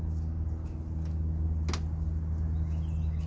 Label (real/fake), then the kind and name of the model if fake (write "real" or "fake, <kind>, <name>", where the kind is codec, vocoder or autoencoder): real